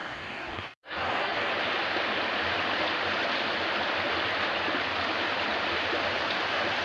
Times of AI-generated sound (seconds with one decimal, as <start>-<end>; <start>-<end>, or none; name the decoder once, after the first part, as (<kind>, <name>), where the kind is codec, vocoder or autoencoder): 0.0-1.5 (codec, DAC)